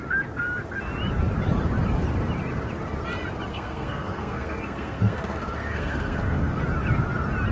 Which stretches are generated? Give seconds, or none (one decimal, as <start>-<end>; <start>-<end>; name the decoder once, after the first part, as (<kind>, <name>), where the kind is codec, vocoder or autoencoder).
3.5-6.6 (codec, SNAC)